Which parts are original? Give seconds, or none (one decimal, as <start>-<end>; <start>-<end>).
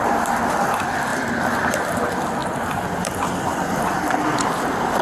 0.0-5.0